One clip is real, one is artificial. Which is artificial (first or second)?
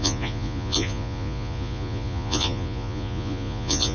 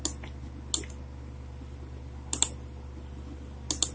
first